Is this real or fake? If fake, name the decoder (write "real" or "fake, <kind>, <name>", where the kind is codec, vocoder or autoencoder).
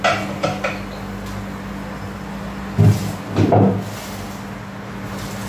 real